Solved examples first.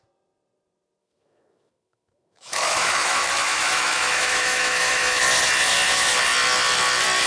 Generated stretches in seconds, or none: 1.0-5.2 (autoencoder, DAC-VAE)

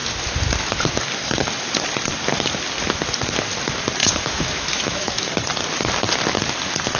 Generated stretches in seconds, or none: 4.0-5.3 (autoencoder, DAC-VAE)